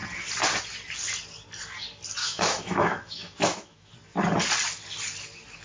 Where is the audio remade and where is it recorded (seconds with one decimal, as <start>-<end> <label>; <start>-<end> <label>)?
0.0-2.2 recorded; 2.2-3.9 remade; 3.9-5.6 recorded